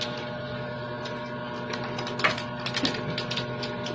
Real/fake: real